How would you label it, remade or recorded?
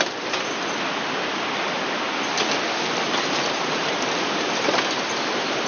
recorded